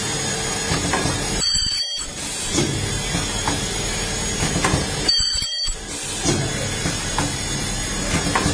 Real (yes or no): no